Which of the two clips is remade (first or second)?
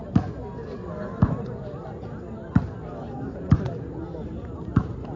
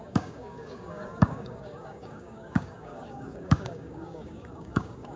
second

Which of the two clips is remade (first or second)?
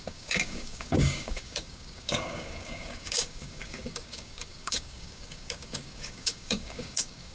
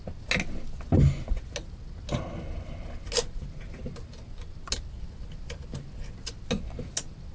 first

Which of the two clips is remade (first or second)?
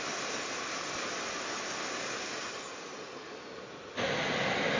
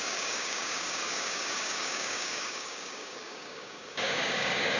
second